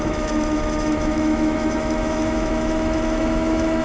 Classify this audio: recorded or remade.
remade